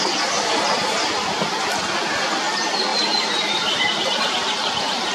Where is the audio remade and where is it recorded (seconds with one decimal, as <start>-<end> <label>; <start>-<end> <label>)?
0.0-5.1 recorded